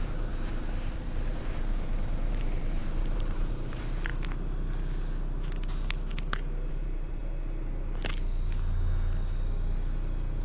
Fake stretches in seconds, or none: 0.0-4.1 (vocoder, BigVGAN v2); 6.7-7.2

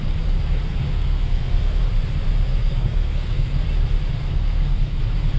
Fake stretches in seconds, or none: 0.7-1.8 (codec, SNAC); 2.5-3.6; 4.2-5.0

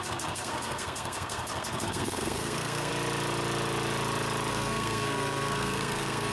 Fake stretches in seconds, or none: 0.0-2.9 (codec, SNAC); 4.5-6.3